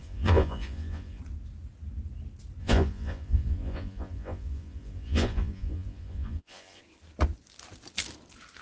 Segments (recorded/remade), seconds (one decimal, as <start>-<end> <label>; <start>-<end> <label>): 0.0-1.2 remade; 1.2-2.6 recorded; 2.6-6.8 remade; 6.8-8.6 recorded